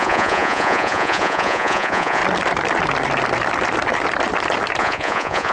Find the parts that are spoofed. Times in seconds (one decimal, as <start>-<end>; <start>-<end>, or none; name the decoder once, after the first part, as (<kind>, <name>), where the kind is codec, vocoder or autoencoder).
0.0-2.2 (vocoder, Vocos); 4.8-5.5